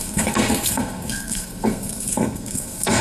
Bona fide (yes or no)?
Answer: no